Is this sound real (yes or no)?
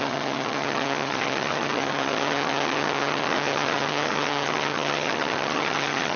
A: no